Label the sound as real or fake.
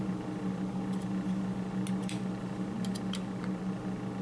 real